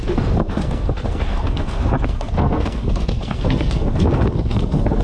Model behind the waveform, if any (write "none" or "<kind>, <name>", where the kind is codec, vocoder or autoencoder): codec, SNAC